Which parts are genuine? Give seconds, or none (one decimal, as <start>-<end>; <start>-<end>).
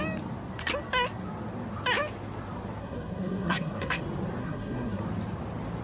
0.0-2.8; 4.0-4.4; 5.0-5.8